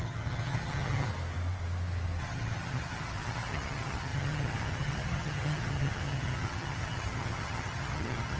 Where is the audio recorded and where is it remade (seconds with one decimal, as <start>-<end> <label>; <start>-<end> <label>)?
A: 0.0-1.1 remade; 1.1-2.2 recorded; 2.2-8.4 remade